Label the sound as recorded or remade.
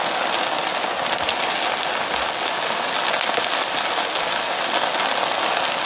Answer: recorded